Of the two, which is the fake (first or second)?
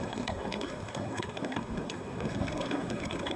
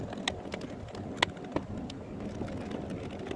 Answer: first